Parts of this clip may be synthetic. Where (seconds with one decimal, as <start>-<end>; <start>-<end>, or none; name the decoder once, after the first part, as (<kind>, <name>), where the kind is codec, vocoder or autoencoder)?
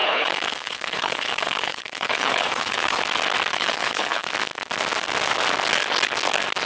0.0-3.0 (codec, HILCodec); 3.5-4.3